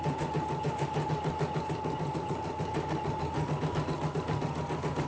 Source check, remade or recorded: recorded